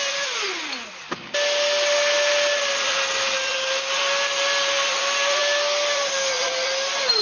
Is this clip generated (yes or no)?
no